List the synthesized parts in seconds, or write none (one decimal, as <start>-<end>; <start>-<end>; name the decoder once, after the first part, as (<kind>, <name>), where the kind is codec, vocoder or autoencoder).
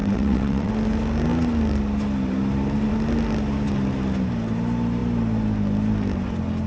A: 0.0-0.7 (vocoder, WaveNeXt)